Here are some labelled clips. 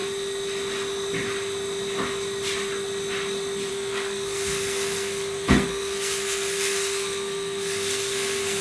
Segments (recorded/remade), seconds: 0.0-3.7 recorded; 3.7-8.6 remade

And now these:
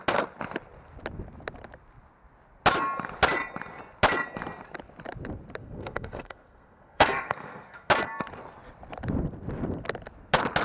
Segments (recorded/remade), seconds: 0.0-5.6 recorded; 5.6-7.9 remade; 7.9-10.6 recorded

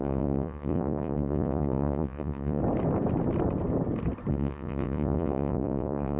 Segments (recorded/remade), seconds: 0.0-2.6 remade; 2.6-4.3 recorded; 4.3-6.2 remade

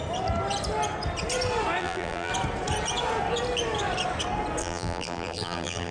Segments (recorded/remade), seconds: 0.0-1.8 recorded; 1.8-2.3 remade; 2.3-4.6 recorded; 4.6-5.9 remade

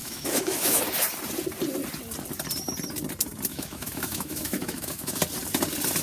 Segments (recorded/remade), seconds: 0.0-0.8 remade; 0.8-3.5 recorded; 3.5-5.2 remade; 5.2-6.0 recorded

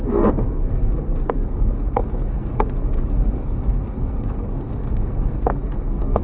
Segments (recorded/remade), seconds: 0.0-6.2 remade

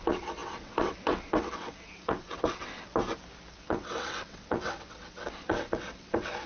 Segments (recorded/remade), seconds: 0.0-2.9 remade; 2.9-3.5 recorded; 3.5-6.5 remade